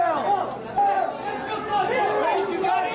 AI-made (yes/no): no